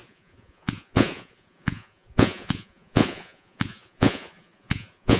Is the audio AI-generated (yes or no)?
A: yes